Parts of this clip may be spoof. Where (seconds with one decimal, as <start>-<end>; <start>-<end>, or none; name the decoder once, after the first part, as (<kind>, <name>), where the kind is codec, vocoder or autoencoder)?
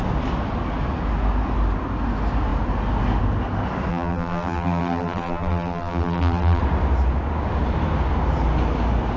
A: 3.9-6.6 (vocoder, BigVGAN v2)